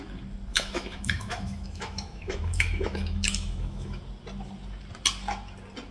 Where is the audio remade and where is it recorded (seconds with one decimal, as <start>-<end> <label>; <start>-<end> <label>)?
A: 0.0-0.5 recorded; 0.5-4.0 remade; 4.0-5.9 recorded